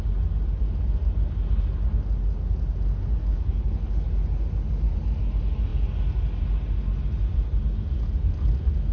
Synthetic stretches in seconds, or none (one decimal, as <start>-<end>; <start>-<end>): 3.3-4.1